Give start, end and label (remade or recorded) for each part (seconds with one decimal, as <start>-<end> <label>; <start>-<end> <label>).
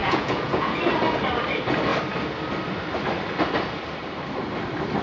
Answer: 0.0-0.8 remade; 0.8-5.0 recorded